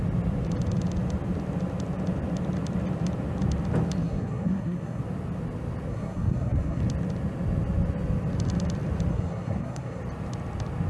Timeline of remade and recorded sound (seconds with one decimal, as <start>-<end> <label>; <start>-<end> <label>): 0.0-4.0 recorded; 4.0-5.0 remade; 5.0-5.9 recorded; 5.9-6.8 remade; 6.8-9.1 recorded; 9.1-10.0 remade; 10.0-10.9 recorded